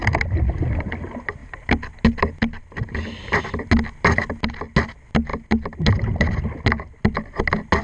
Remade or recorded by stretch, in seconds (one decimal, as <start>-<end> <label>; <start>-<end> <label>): 0.0-7.8 recorded